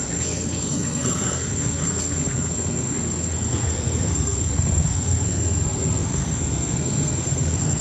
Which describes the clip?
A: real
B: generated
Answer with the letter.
B